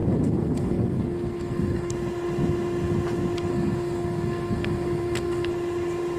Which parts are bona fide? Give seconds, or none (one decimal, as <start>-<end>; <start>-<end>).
1.9-3.5; 5.5-6.2